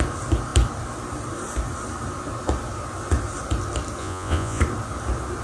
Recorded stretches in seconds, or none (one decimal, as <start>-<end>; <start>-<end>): 0.0-4.0; 4.6-5.4